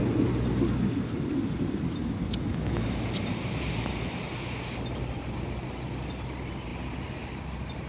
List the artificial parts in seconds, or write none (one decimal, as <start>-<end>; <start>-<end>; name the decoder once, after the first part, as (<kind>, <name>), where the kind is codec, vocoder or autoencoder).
none